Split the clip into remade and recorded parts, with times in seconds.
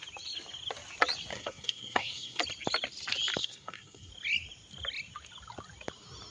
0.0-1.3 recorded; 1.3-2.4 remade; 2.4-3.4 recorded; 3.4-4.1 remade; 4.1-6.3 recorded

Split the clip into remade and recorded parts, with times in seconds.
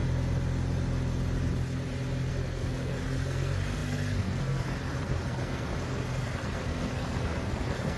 0.0-2.3 recorded; 2.3-8.0 remade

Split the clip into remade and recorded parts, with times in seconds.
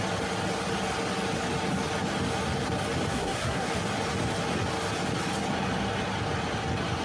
0.0-3.1 recorded; 3.1-3.7 remade; 3.7-7.0 recorded